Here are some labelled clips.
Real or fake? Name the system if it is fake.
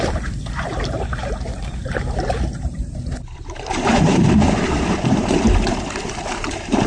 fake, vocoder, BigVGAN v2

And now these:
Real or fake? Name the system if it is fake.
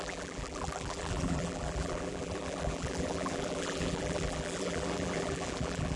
fake, vocoder, BigVGAN v2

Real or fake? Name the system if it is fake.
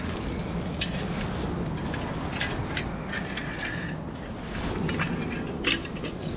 real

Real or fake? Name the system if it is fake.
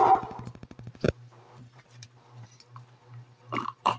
fake, vocoder, BigVGAN v2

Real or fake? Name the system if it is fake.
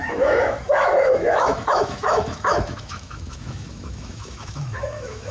fake, autoencoder, DAC-VAE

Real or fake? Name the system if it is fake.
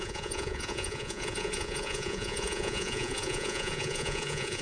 fake, vocoder, Vocos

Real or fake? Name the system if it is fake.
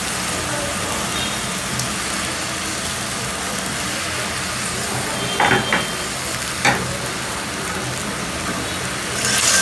real